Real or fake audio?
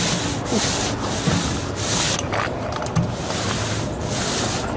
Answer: real